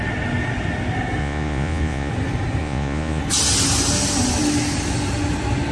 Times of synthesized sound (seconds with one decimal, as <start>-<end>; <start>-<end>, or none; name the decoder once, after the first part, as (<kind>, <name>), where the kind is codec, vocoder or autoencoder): 1.2-2.1 (vocoder, Vocos); 2.6-3.2